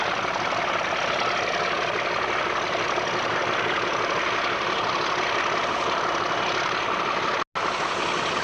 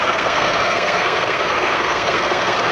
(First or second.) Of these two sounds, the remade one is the second